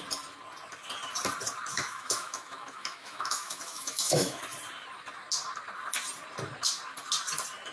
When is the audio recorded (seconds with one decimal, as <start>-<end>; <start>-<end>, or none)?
0.0-1.7; 4.4-7.7

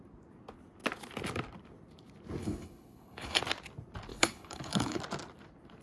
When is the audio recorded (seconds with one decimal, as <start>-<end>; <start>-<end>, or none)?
0.0-2.4; 3.4-4.1; 5.0-5.8